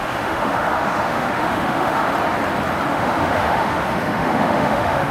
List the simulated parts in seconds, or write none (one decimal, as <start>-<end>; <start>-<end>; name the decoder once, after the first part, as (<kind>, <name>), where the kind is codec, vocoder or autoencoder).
0.0-2.1 (autoencoder, DAC-VAE); 2.9-5.1